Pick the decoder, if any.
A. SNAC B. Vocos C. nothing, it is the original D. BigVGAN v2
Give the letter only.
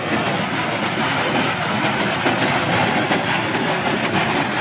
C